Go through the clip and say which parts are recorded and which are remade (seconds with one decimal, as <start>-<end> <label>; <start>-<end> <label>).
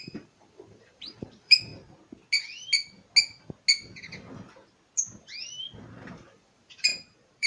0.0-1.7 remade; 1.7-6.1 recorded; 6.1-7.5 remade